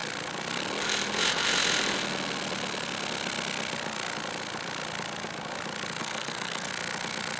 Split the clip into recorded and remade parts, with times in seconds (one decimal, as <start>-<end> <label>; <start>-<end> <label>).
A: 0.0-6.0 recorded; 6.0-6.7 remade; 6.7-7.4 recorded